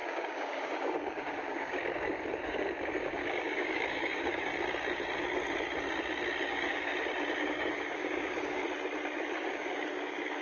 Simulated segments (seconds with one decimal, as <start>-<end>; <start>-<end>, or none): 0.0-4.5; 6.4-6.9; 7.4-8.6; 9.3-10.4